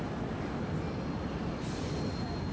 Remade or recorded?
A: recorded